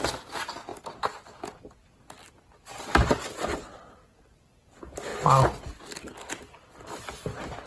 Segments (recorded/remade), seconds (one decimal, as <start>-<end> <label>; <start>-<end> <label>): 0.0-7.7 recorded